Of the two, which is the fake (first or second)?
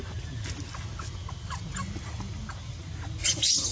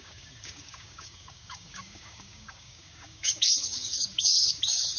second